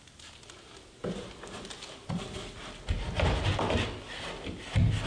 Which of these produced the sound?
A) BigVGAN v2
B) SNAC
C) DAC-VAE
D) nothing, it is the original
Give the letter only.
D